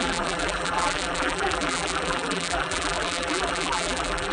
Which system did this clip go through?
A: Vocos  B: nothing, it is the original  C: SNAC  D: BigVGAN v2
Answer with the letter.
D